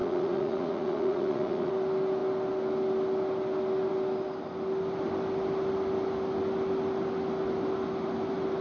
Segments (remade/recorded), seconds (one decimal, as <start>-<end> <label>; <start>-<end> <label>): 0.0-1.7 remade; 1.7-8.6 recorded